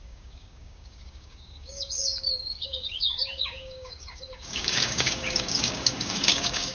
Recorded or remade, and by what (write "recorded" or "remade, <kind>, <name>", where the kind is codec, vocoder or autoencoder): remade, codec, DAC